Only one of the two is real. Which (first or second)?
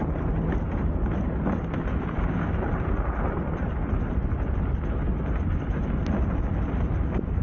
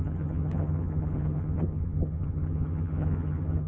first